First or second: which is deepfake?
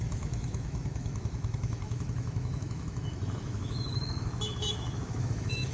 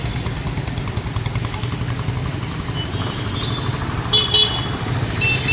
first